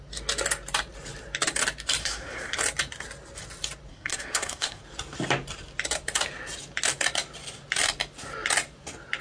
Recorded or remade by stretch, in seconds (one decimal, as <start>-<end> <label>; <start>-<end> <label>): 0.0-2.0 recorded; 2.0-2.6 remade; 2.6-3.9 recorded; 3.9-4.8 remade; 4.8-9.2 recorded